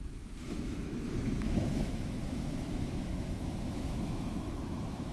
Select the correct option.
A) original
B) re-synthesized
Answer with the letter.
B